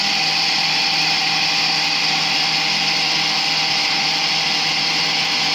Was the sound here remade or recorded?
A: recorded